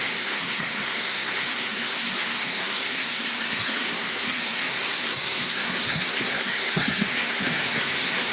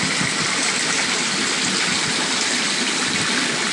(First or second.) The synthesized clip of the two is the first